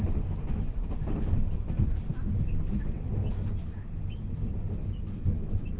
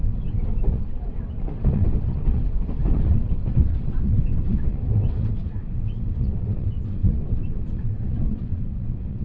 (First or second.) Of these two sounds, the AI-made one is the second